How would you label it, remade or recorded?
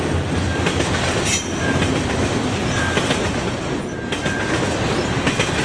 recorded